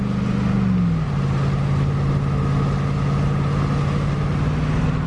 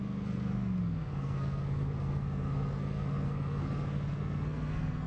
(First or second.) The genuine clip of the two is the first